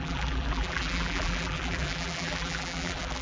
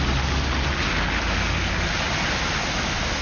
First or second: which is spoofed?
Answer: first